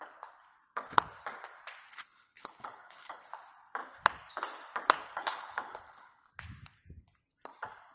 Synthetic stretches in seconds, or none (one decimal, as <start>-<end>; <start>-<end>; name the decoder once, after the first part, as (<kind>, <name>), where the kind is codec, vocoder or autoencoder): 1.9-3.3 (codec, HILCodec); 5.0-6.3